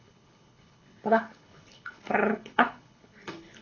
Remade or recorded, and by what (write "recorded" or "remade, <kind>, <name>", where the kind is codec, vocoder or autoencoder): remade, codec, HILCodec